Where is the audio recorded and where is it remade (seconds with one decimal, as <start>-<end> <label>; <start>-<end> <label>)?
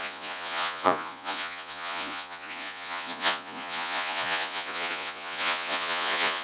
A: 0.0-6.4 remade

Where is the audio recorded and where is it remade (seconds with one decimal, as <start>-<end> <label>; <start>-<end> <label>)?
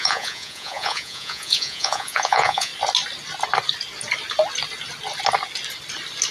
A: 0.0-2.7 remade; 2.7-6.3 recorded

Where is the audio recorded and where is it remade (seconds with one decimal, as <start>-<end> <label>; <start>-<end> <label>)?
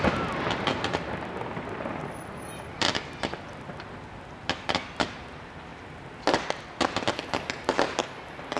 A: 0.0-8.6 recorded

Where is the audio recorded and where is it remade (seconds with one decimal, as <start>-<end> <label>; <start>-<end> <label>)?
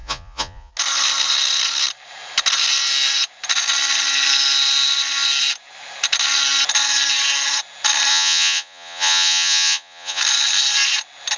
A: 0.0-0.7 remade; 0.7-8.1 recorded; 8.1-10.2 remade; 10.2-11.4 recorded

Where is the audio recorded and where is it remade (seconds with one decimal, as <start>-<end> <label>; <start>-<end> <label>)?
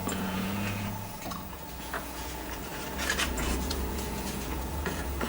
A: 0.0-2.7 remade; 2.7-3.3 recorded; 3.3-5.3 remade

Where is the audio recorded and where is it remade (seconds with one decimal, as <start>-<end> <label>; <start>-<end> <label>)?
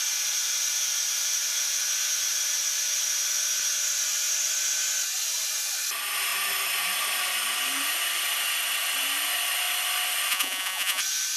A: 0.0-10.3 recorded; 10.3-11.0 remade; 11.0-11.4 recorded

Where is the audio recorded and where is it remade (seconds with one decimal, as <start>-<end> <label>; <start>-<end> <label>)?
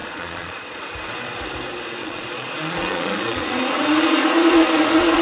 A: 0.0-0.8 remade; 0.8-2.0 recorded; 2.0-5.2 remade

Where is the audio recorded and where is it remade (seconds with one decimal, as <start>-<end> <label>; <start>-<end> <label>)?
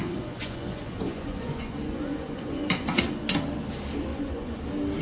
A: 0.0-3.0 remade; 3.0-4.1 recorded; 4.1-4.6 remade; 4.6-5.0 recorded